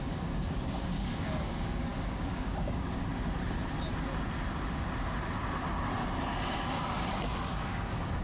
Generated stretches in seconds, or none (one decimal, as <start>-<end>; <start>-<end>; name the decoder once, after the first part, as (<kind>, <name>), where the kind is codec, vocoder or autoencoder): 0.0-3.0 (codec, DAC); 7.5-8.2